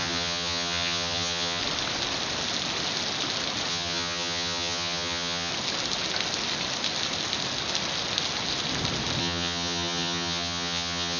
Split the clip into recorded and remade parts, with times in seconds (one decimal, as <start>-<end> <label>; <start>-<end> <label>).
0.0-1.6 remade; 1.6-3.7 recorded; 3.7-5.5 remade; 5.5-9.2 recorded; 9.2-11.2 remade